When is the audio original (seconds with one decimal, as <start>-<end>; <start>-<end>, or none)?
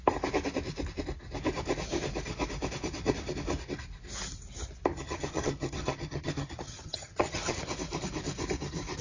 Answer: 0.0-4.9; 7.6-9.0